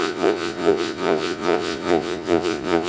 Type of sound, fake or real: fake